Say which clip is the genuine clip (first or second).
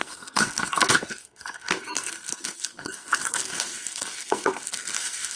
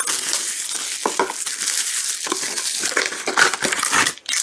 second